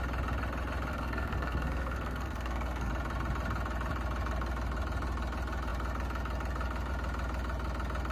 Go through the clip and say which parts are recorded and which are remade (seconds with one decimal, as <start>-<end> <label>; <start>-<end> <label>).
0.0-0.9 recorded; 0.9-2.9 remade; 2.9-8.1 recorded